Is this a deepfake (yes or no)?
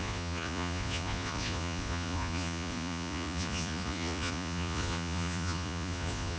yes